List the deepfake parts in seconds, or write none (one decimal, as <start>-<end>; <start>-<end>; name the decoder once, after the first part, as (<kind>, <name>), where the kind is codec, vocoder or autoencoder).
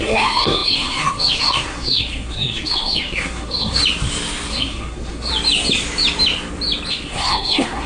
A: 0.0-3.8 (codec, SNAC); 4.5-5.3; 6.9-7.9